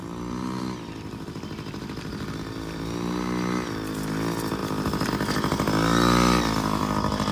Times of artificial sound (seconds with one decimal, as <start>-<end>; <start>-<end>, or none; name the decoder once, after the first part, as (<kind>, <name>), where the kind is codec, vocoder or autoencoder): none